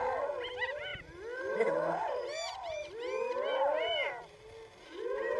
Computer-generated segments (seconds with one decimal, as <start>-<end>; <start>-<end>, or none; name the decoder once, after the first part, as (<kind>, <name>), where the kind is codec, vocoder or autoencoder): none